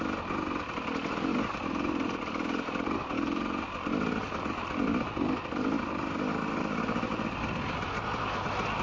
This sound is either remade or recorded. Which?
recorded